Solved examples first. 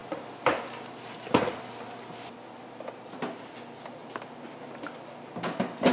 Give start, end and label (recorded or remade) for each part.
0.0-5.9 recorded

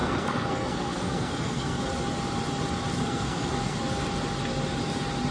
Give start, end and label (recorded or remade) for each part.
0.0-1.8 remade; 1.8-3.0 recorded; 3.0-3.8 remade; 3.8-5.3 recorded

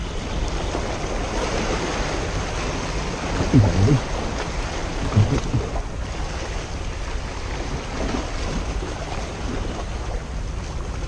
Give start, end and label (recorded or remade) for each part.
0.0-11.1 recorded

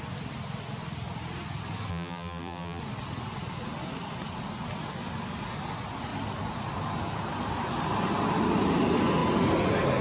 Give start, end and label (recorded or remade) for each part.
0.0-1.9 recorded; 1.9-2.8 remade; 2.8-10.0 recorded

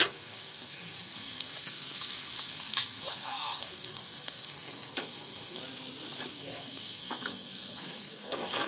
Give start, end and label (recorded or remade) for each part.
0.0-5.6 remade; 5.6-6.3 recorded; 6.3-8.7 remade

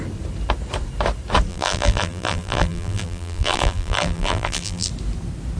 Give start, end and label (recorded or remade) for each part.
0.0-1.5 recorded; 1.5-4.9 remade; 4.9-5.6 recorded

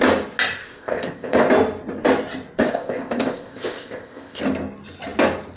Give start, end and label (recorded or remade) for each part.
0.0-0.6 recorded; 0.6-1.5 remade; 1.5-2.6 recorded; 2.6-4.4 remade; 4.4-5.6 recorded

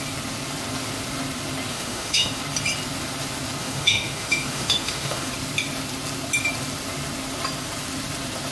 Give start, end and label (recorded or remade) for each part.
0.0-1.7 recorded; 1.7-2.4 remade; 2.4-3.6 recorded; 3.6-5.3 remade; 5.3-8.5 recorded